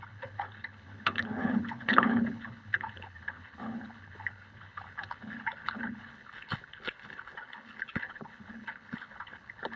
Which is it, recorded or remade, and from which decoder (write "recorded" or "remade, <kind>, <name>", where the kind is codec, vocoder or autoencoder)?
remade, codec, HILCodec